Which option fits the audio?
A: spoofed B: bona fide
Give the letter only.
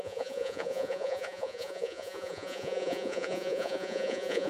A